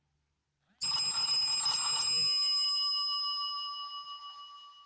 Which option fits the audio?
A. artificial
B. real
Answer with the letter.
B